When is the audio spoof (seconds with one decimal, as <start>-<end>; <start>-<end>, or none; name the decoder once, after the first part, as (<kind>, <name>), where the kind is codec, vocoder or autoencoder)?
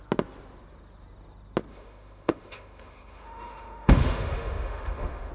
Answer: 1.7-5.3 (autoencoder, DAC-VAE)